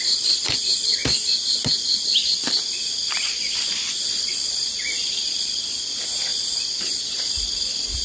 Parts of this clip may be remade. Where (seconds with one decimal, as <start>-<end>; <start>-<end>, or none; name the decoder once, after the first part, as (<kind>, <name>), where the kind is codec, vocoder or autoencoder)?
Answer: none